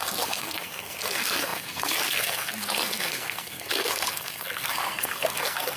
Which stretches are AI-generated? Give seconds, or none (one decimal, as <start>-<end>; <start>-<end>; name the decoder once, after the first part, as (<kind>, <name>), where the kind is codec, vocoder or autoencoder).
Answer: 0.0-5.8 (codec, SNAC)